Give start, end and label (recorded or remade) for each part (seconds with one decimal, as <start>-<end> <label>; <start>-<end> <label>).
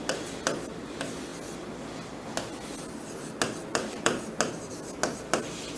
0.0-3.7 recorded; 3.7-4.2 remade; 4.2-5.8 recorded